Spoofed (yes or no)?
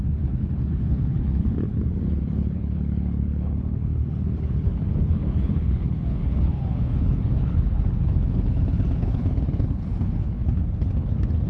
yes